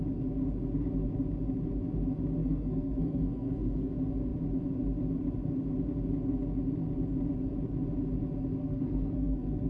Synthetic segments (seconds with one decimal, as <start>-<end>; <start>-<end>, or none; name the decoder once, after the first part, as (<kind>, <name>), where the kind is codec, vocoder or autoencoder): 2.4-3.9 (codec, SNAC); 8.6-9.7